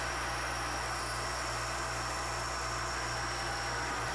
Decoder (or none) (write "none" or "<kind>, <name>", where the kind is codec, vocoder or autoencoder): none